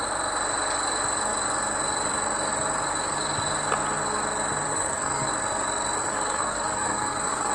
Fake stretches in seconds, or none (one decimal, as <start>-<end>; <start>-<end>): 4.7-5.3; 6.0-7.5

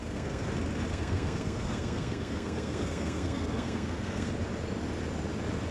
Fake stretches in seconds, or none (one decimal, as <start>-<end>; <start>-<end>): 0.0-0.5; 0.9-4.3

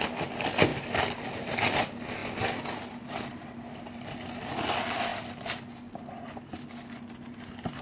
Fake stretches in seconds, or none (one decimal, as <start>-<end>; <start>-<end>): none

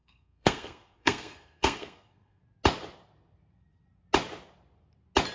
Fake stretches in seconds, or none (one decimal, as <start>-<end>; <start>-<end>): 0.0-2.4

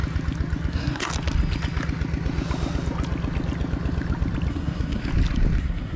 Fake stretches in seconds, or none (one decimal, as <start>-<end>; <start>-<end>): 0.7-1.1; 4.5-5.1; 5.6-6.0

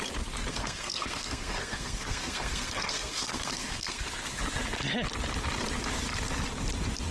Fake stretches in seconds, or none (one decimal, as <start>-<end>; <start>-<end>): 0.5-4.1

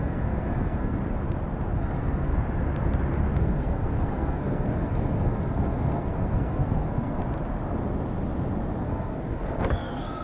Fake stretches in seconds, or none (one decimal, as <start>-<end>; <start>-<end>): 0.0-1.0; 1.8-2.3; 3.4-7.2; 8.8-10.2

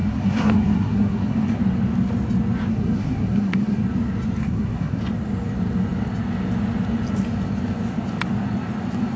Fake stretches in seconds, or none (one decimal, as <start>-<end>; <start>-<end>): 0.0-1.6; 2.7-3.8; 4.4-5.0